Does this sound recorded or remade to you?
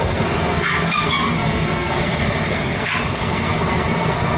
remade